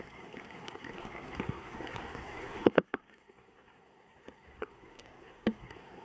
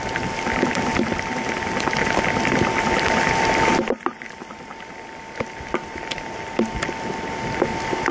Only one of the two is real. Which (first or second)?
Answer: second